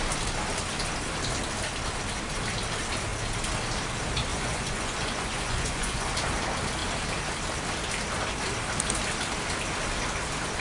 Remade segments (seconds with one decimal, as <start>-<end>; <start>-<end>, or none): 4.3-6.1